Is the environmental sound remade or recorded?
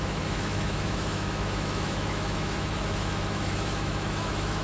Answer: remade